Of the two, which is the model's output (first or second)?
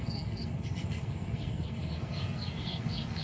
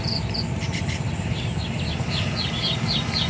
first